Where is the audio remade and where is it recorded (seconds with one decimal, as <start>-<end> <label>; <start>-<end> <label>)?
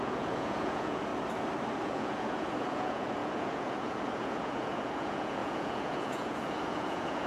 0.0-1.1 remade; 1.1-1.8 recorded; 1.8-7.3 remade